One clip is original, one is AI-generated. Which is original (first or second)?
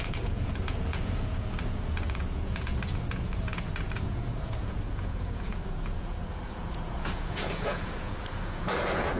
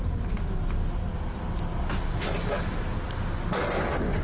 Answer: second